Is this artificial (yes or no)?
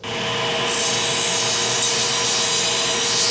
no